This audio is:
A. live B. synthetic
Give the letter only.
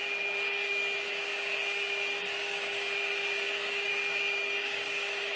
B